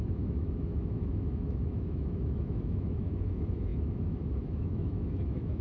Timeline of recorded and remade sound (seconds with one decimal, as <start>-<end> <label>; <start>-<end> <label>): 0.0-5.6 remade